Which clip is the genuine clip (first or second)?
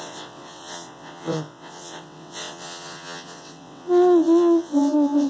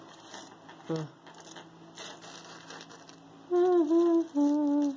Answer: second